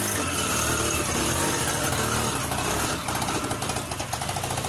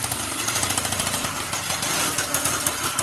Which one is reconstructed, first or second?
second